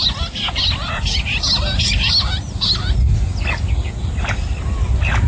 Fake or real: real